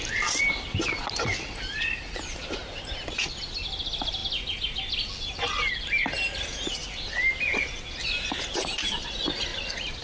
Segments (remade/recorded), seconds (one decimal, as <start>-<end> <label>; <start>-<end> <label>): 0.0-2.6 recorded; 2.6-3.3 remade; 3.3-10.0 recorded